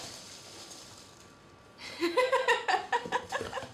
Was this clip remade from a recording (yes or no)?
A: no